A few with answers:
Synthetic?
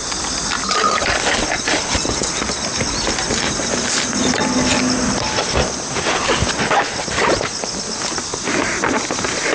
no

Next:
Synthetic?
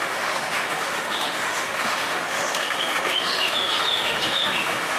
yes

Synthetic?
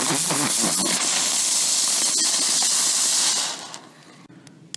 no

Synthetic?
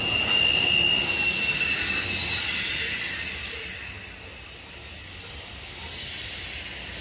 no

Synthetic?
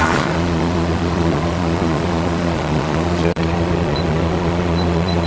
yes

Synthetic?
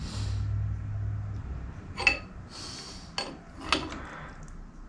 no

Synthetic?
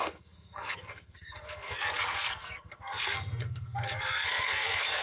yes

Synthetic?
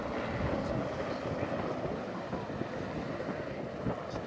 no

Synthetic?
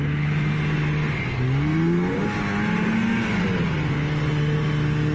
no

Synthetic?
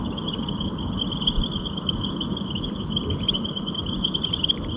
no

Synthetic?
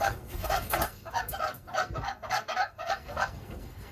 yes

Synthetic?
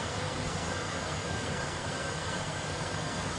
yes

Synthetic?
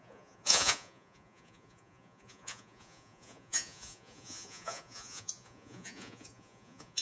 yes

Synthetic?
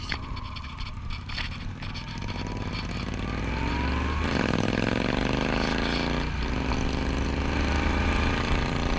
no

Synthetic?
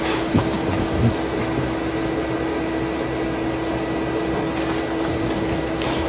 no